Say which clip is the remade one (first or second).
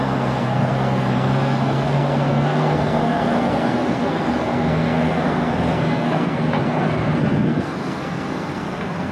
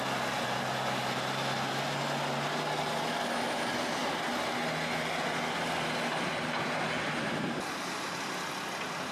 first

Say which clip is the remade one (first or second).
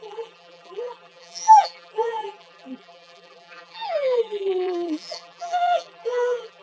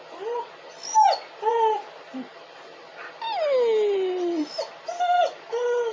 first